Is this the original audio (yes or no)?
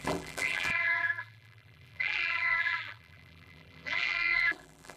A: no